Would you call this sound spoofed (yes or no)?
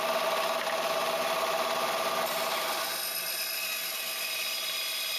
no